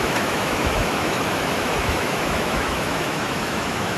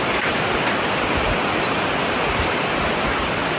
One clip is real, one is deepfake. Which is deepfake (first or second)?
first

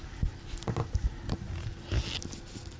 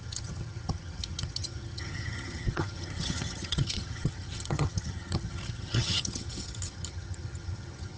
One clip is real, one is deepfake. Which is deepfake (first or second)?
second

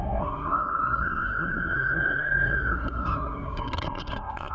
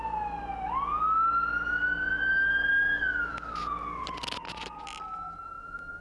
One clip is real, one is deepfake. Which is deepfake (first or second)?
first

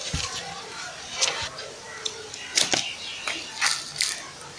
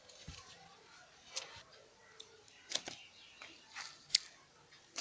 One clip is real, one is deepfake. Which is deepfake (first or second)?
second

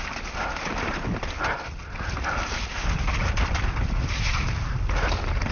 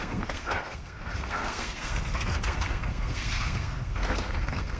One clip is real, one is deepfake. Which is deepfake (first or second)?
second